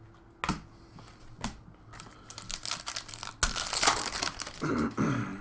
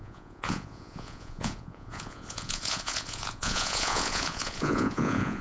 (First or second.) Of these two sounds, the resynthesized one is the second